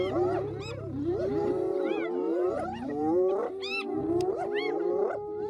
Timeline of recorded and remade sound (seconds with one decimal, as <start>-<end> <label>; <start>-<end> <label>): 0.0-5.5 remade